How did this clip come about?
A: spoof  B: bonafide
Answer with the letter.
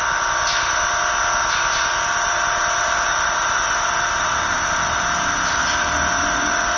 B